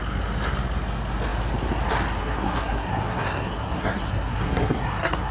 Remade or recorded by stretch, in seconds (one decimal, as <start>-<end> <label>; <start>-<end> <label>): 0.0-2.2 recorded; 2.2-5.3 remade